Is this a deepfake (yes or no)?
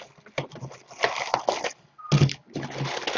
no